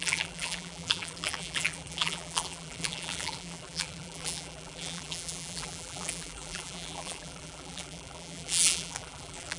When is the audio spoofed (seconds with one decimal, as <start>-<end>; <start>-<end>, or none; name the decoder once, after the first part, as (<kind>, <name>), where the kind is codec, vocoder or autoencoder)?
0.0-9.6 (vocoder, BigVGAN v2)